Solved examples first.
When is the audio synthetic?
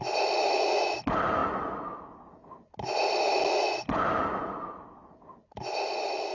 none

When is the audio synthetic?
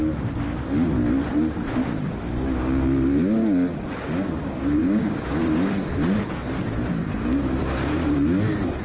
4.8-5.4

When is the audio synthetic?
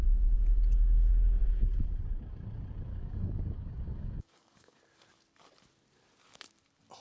0.5-1.1; 2.9-4.8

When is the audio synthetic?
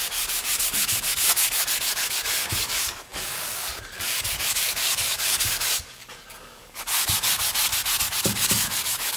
0.0-7.7; 8.2-9.2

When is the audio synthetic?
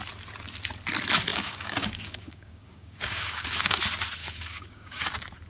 1.3-3.8; 4.2-5.0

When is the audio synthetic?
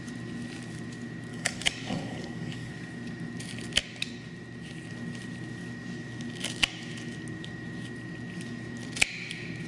1.3-2.7